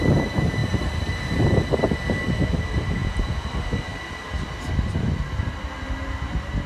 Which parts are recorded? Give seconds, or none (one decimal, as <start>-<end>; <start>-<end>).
0.0-3.0; 3.5-6.7